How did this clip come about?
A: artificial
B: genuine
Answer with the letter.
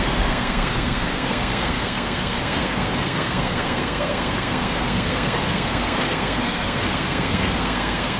A